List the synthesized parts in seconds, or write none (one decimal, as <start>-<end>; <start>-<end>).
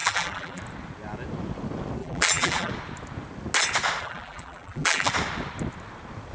0.0-0.6; 2.0-2.7; 4.0-5.1